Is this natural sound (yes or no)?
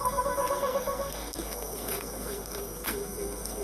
no